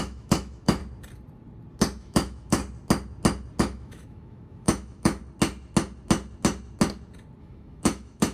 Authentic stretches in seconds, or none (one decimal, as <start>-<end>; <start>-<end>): 0.8-2.0; 2.6-3.6; 5.2-7.4